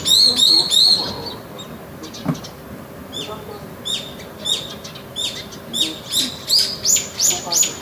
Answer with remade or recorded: recorded